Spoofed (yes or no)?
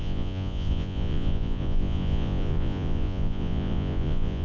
yes